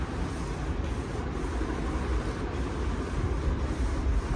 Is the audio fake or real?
real